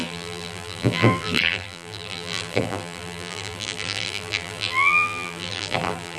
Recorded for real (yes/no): no